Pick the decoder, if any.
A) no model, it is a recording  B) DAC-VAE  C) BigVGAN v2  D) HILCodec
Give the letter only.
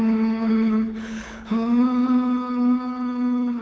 D